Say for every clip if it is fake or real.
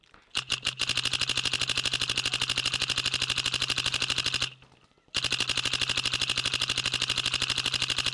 real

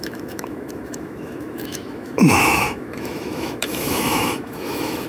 fake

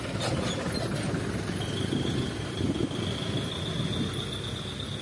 real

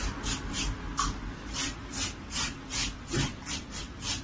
real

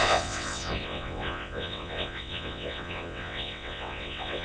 fake